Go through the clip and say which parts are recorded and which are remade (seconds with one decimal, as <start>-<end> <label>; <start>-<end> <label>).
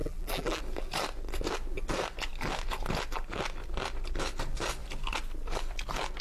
0.0-0.6 remade; 0.6-6.2 recorded